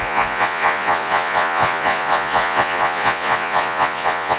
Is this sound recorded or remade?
remade